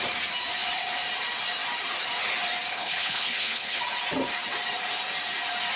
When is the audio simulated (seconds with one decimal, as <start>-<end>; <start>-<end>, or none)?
2.7-3.8